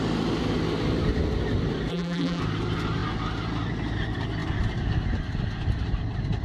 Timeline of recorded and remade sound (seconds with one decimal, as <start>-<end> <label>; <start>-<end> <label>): 0.0-1.9 recorded; 1.9-2.4 remade; 2.4-6.4 recorded